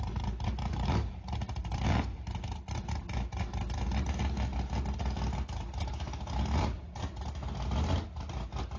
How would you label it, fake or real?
real